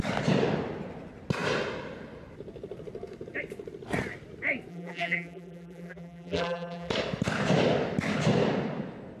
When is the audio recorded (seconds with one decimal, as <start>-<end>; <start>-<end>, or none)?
0.0-4.7; 6.9-9.2